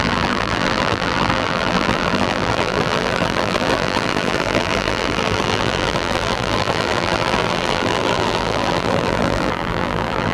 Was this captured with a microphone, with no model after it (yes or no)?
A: no